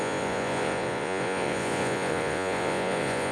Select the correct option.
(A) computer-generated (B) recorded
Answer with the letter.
A